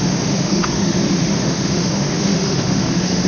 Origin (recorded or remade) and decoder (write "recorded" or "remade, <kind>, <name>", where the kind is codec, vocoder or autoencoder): remade, autoencoder, DAC-VAE